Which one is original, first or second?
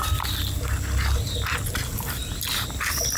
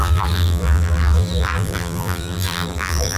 first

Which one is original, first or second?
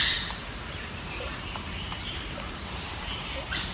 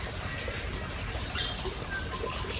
second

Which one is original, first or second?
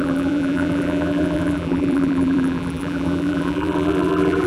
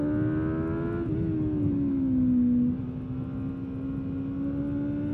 second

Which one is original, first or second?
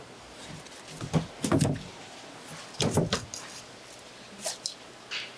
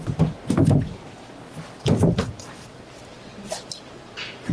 first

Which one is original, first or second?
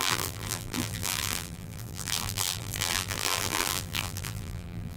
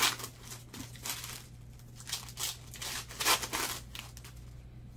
second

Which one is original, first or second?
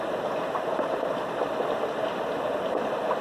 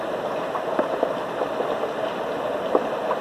second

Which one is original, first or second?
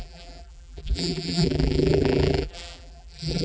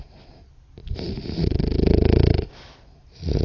second